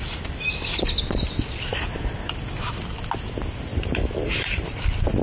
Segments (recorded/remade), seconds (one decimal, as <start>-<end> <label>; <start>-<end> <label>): 0.0-3.7 recorded; 3.7-5.2 remade

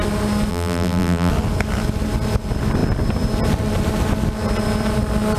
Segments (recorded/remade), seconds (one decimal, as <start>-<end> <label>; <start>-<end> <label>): 0.0-0.5 recorded; 0.5-1.3 remade; 1.3-5.4 recorded

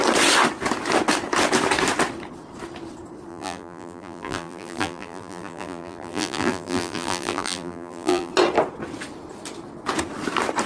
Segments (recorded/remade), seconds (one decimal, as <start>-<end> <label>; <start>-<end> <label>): 0.0-3.3 recorded; 3.3-8.3 remade; 8.3-10.7 recorded

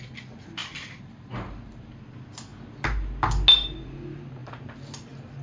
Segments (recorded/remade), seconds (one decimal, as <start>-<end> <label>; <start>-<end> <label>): 0.0-5.4 recorded

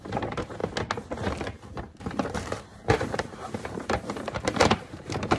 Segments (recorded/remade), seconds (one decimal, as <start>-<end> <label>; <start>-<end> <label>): 0.0-0.6 remade; 0.6-1.8 recorded; 1.8-5.4 remade

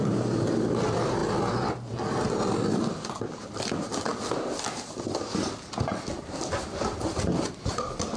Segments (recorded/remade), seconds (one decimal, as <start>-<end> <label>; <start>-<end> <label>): 0.0-8.2 recorded

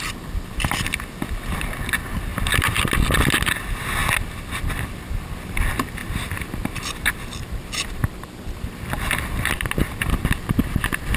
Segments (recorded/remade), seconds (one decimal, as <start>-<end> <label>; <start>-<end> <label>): 0.0-2.3 recorded; 2.3-2.9 remade; 2.9-6.0 recorded; 6.0-10.2 remade; 10.2-11.2 recorded

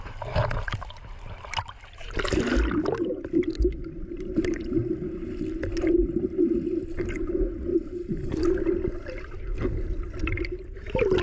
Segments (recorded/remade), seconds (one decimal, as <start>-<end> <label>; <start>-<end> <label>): 0.0-11.2 recorded